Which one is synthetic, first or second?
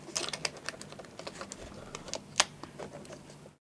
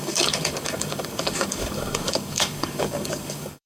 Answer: second